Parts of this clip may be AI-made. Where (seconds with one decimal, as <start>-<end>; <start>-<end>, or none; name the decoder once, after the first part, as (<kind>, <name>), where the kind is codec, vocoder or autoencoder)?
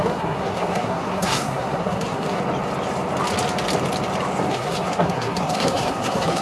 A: 0.0-2.4 (codec, SNAC); 4.5-6.4